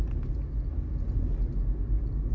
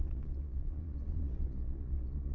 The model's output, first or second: second